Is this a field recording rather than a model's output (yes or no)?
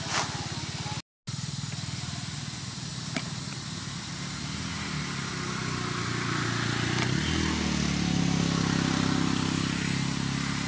yes